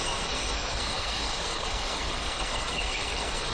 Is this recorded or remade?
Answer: remade